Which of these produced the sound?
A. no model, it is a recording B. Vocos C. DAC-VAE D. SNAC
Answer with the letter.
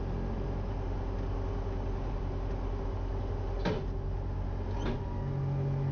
A